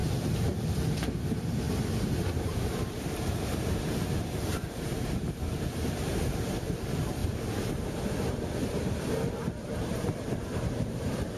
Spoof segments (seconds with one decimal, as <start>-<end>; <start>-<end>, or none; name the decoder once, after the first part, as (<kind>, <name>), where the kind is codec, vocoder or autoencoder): 0.0-7.2 (vocoder, BigVGAN v2); 8.2-11.4